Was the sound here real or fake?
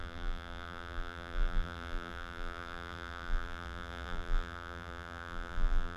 fake